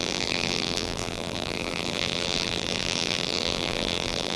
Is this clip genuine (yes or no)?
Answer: no